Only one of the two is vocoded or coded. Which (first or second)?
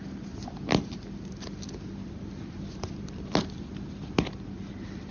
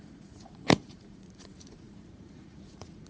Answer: second